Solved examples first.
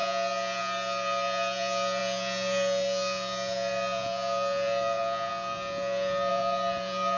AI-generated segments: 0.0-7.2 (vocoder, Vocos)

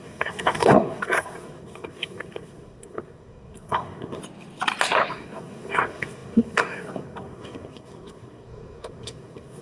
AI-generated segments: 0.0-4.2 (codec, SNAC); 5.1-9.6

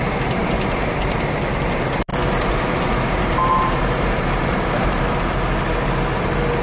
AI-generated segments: 0.4-1.0 (vocoder, BigVGAN v2); 2.1-5.0

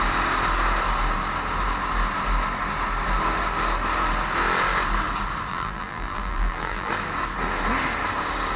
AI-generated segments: 5.5-6.9 (vocoder, BigVGAN v2)

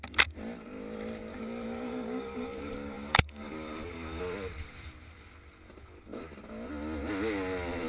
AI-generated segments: 1.3-4.2 (codec, DAC)